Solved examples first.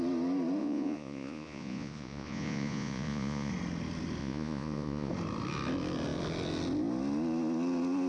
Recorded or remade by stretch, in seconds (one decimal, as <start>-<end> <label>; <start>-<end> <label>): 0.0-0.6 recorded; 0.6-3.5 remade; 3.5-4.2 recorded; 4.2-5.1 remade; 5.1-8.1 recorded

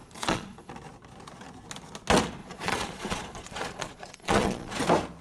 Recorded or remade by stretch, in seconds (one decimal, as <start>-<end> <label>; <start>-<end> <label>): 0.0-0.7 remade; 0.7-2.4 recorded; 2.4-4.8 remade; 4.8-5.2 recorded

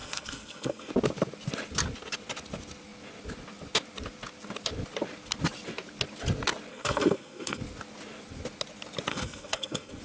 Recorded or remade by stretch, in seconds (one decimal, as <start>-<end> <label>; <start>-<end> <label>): 0.0-0.9 remade; 0.9-6.7 recorded; 6.7-7.6 remade; 7.6-9.1 recorded; 9.1-10.0 remade